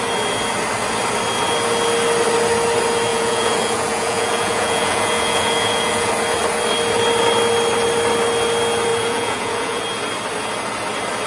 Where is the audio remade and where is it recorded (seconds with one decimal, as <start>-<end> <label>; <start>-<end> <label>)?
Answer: 0.0-3.1 recorded; 3.1-6.1 remade; 6.1-8.9 recorded; 8.9-9.8 remade; 9.8-11.3 recorded